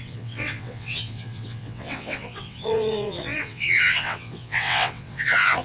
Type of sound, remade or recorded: remade